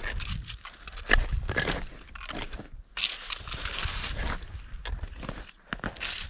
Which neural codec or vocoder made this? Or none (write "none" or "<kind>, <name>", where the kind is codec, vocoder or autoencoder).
none